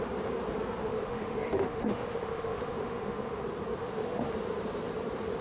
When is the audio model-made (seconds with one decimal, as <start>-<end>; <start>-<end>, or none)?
0.8-3.4; 3.8-4.3